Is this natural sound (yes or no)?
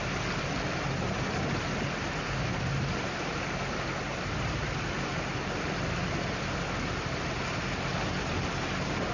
yes